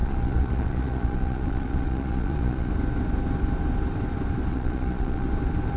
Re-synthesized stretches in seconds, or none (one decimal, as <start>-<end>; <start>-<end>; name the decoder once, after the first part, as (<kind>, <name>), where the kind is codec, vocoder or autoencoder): 0.0-2.7 (vocoder, Vocos); 4.5-5.3